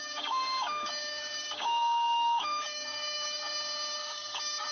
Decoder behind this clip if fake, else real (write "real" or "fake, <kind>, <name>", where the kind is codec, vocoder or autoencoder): fake, codec, DAC